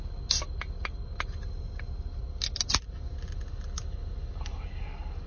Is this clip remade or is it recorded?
recorded